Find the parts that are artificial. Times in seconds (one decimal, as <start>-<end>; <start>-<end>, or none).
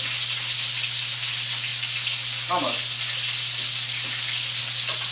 none